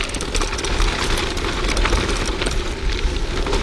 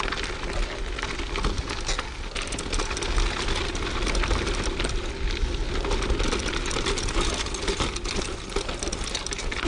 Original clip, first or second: second